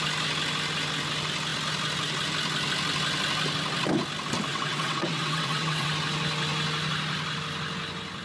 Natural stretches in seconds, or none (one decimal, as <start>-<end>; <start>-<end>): 0.0-4.5; 5.9-8.2

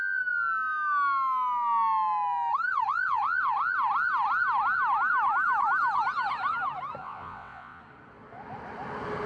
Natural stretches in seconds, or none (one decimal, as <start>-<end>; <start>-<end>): 0.0-7.0; 7.8-9.3

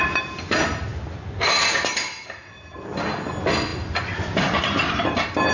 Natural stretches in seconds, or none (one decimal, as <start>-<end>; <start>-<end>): 0.0-5.5